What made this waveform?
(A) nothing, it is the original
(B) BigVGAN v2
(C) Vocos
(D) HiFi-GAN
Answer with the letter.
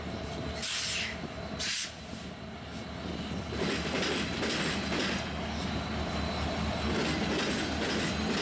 A